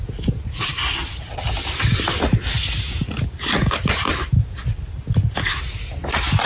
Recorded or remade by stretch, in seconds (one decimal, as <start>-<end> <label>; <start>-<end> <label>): 0.0-6.5 recorded